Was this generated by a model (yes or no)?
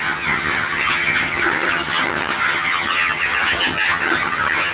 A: yes